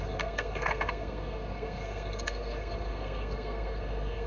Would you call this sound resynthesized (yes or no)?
yes